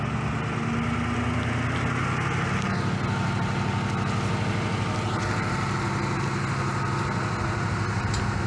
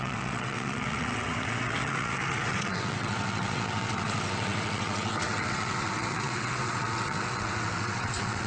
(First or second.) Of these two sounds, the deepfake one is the second